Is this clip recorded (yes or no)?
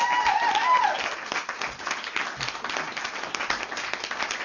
yes